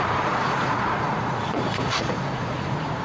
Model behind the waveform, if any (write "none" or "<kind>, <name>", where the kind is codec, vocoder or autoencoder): vocoder, Vocos